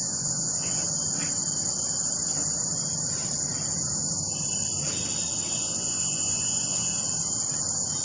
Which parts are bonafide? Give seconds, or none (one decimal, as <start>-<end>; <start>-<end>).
0.8-5.5; 6.9-8.0